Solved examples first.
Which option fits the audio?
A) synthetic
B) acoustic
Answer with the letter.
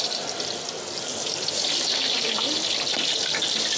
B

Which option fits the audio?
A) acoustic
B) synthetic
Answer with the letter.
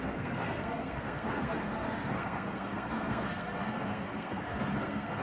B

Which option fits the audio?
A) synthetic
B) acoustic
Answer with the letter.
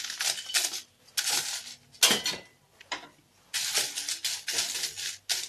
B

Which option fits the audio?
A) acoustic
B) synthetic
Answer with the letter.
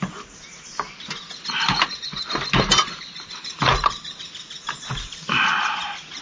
A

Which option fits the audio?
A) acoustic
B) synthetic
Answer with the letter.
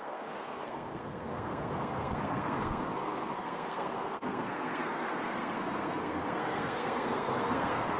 B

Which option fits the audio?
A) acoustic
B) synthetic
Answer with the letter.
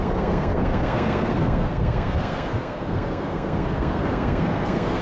B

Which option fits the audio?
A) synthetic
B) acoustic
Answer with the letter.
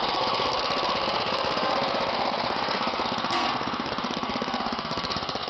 A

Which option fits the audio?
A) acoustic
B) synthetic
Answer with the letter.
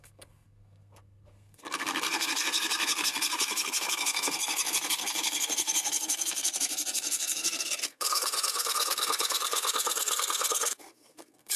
B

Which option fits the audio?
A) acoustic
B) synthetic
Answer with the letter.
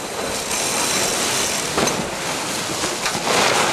A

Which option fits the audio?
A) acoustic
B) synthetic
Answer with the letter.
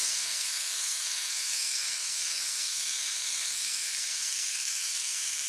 B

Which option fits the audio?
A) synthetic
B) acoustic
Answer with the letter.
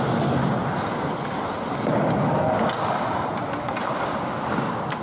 B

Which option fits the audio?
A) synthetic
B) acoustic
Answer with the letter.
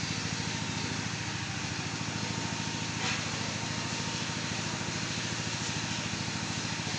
B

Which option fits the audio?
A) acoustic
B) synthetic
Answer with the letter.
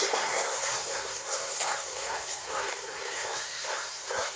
B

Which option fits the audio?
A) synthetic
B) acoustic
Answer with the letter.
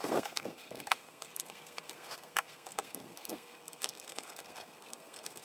A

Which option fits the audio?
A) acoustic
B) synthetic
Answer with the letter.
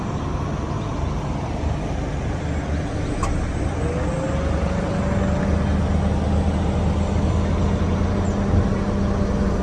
A